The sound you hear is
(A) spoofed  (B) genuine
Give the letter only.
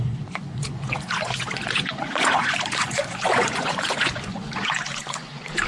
A